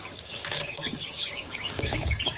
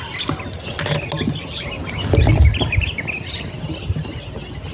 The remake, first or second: first